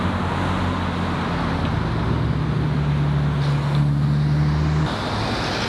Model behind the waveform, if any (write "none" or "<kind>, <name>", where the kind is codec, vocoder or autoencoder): none